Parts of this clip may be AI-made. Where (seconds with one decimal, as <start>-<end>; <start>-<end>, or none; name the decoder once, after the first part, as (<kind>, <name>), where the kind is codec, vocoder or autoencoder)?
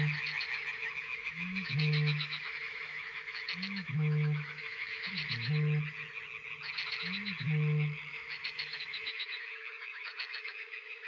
0.8-5.1 (autoencoder, DAC-VAE); 8.1-11.1